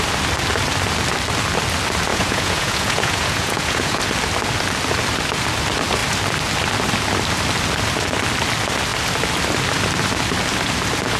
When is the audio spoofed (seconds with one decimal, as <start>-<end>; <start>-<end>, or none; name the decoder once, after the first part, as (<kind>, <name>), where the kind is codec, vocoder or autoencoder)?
2.1-4.0 (vocoder, Vocos)